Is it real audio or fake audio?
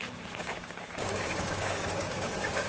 fake